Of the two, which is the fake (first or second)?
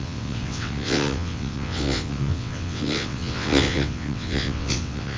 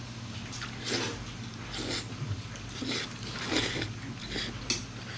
first